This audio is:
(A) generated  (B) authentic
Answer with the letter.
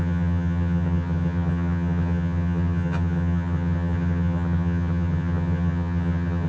A